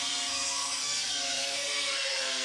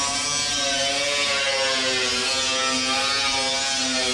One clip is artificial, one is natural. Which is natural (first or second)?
second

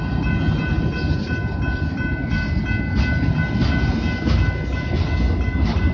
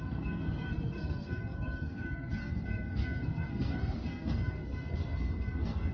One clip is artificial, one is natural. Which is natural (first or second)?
first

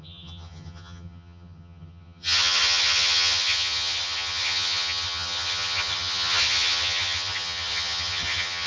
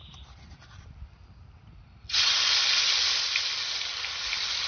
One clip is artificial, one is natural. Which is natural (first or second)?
second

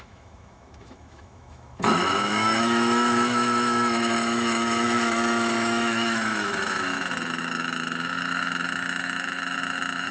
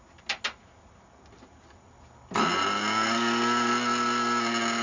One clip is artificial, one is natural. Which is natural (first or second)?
second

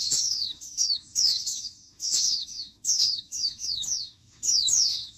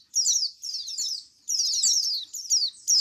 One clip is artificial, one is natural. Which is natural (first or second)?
second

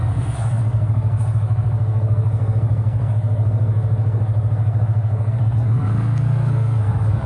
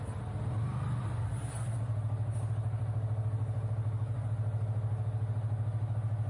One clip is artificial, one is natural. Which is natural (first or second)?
second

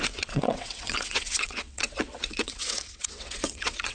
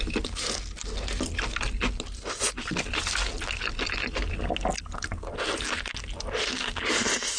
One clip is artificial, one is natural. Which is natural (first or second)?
second